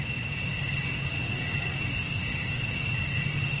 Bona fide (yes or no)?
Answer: yes